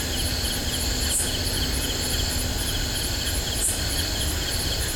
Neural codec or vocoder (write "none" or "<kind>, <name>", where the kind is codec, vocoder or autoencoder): none